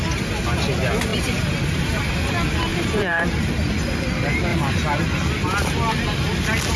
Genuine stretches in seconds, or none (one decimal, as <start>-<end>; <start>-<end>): 0.0-1.1; 2.1-2.7; 3.4-4.5; 5.0-6.8